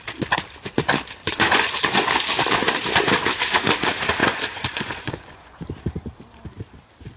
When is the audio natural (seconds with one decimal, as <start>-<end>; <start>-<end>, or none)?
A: 0.0-1.2; 1.9-4.2; 5.6-7.2